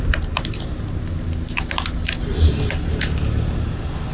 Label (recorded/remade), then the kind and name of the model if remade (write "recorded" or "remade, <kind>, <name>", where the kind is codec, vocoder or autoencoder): recorded